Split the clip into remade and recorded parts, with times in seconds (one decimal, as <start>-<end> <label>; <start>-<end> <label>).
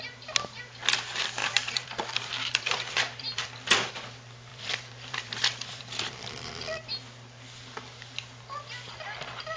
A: 0.0-1.4 recorded; 1.4-3.9 remade; 3.9-4.5 recorded; 4.5-6.5 remade; 6.5-9.6 recorded